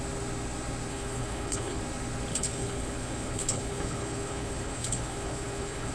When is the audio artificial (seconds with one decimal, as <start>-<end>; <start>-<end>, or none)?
0.9-1.8; 2.3-5.9